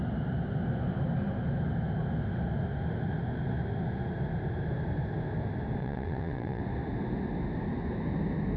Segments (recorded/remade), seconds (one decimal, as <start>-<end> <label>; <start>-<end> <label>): 0.0-5.8 recorded; 5.8-6.6 remade; 6.6-8.6 recorded